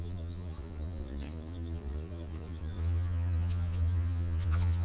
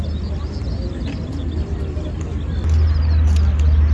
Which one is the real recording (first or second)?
second